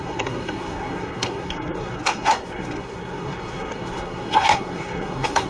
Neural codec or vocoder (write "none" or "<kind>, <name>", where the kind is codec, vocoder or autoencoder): codec, SNAC